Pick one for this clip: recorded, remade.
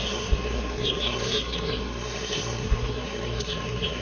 remade